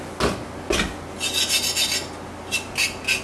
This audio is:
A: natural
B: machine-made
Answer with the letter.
A